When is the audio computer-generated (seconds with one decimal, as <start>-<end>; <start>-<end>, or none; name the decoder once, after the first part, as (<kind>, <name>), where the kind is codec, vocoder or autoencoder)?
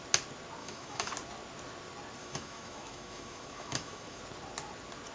0.6-1.1 (autoencoder, DAC-VAE); 2.2-4.2